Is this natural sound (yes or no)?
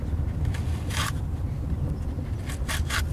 yes